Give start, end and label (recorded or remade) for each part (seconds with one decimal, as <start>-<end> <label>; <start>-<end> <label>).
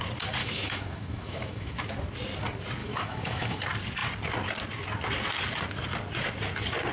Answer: 0.0-0.4 recorded; 0.4-1.9 remade; 1.9-2.8 recorded; 2.8-3.6 remade; 3.6-6.9 recorded